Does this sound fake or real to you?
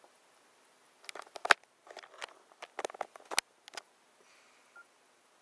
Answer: real